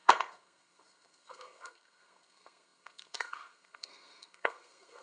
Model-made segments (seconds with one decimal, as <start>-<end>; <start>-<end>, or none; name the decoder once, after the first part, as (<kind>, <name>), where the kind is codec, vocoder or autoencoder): 0.0-5.0 (codec, SNAC)